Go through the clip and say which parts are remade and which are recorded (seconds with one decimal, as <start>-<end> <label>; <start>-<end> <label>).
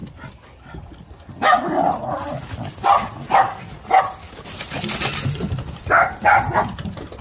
0.0-7.2 recorded